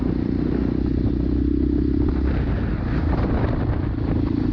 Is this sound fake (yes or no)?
no